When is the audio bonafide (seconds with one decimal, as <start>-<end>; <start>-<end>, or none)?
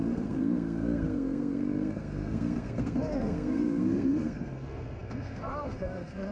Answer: none